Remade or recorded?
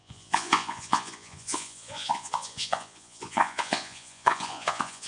remade